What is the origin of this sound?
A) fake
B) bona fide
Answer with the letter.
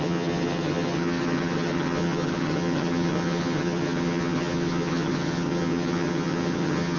A